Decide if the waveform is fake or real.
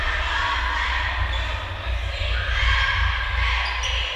real